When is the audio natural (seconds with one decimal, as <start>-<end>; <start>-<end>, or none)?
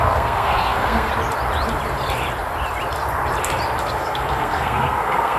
1.1-3.8